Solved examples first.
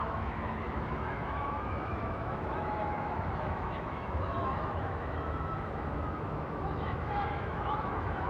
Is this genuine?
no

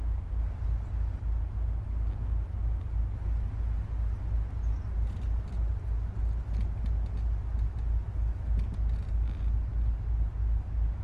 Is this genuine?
yes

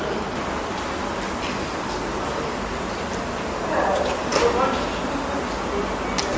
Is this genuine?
yes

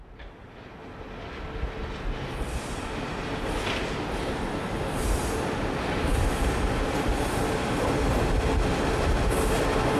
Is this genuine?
yes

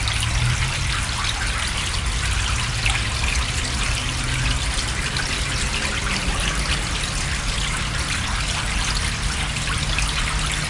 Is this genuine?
yes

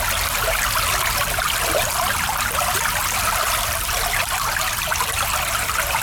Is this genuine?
yes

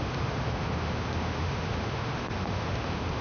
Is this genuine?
no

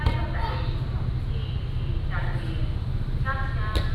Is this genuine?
yes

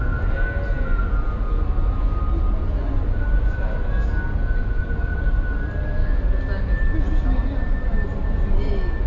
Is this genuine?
yes